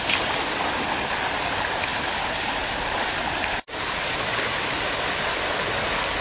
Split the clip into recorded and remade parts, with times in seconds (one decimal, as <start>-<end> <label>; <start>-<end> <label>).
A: 0.0-6.2 recorded